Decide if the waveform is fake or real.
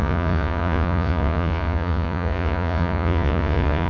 fake